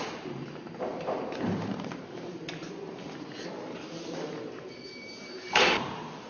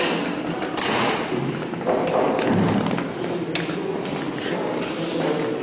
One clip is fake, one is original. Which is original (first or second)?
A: second